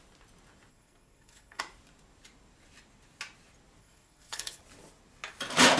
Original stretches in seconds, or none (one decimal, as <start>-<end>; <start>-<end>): 0.0-0.7; 1.6-3.8; 4.6-5.8